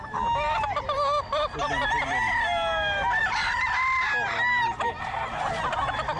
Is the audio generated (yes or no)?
no